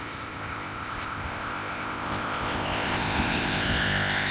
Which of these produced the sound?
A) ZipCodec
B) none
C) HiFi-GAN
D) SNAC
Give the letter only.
A